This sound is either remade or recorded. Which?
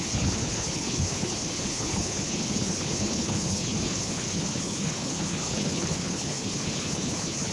remade